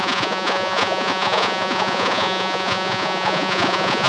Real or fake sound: fake